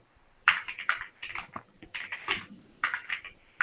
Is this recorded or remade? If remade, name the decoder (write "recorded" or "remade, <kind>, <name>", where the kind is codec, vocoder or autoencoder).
remade, vocoder, BigVGAN v2